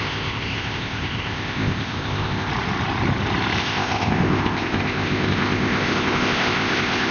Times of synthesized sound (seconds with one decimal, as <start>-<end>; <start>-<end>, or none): 0.0-2.5; 3.6-7.1